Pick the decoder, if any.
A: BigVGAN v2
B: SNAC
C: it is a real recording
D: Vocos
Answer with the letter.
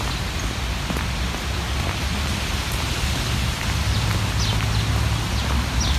C